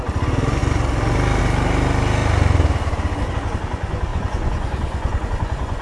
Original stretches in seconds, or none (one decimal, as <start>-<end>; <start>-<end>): 0.0-4.1